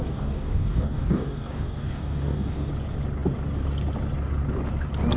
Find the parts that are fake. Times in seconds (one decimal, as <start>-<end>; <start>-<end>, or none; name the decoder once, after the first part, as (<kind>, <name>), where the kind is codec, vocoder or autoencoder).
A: 0.0-2.7 (codec, DAC)